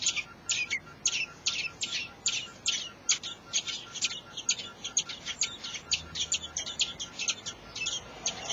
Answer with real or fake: real